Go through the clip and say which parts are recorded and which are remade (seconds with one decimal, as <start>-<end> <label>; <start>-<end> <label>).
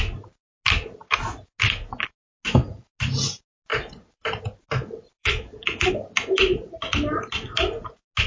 0.0-3.7 recorded; 3.7-4.4 remade; 4.4-5.2 recorded; 5.2-5.9 remade; 5.9-8.3 recorded